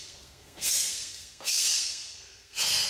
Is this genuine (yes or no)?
no